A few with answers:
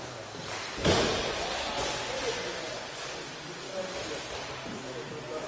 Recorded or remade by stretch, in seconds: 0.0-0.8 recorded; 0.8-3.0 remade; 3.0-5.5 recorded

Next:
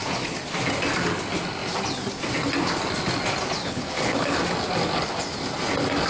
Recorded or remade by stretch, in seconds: 0.0-3.6 recorded; 3.6-4.4 remade; 4.4-6.1 recorded

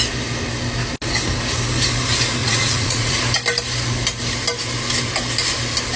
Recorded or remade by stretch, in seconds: 0.0-2.4 recorded; 2.4-3.2 remade; 3.2-6.0 recorded

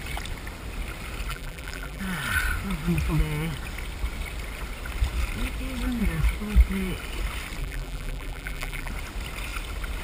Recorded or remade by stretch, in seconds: 0.0-1.3 recorded; 1.3-2.0 remade; 2.0-7.6 recorded; 7.6-8.9 remade; 8.9-10.0 recorded

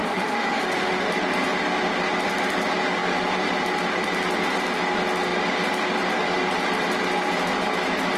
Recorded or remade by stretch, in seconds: 0.0-1.1 remade; 1.1-8.2 recorded

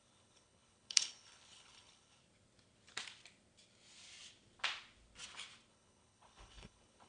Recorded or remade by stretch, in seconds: 0.0-2.2 remade; 2.2-5.7 recorded; 5.7-7.1 remade

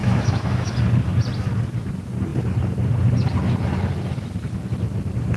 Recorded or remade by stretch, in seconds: 0.0-0.7 remade; 0.7-5.4 recorded

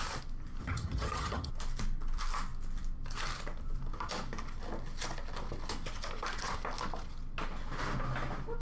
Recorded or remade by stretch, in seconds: 0.0-0.6 recorded; 0.6-1.5 remade; 1.5-8.6 recorded